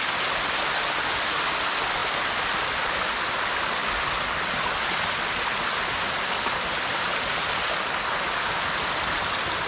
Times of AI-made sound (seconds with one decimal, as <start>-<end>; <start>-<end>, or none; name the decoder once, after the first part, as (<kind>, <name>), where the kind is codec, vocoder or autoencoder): none